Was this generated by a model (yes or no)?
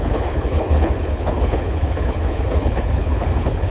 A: yes